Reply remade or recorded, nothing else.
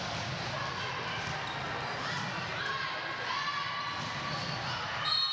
recorded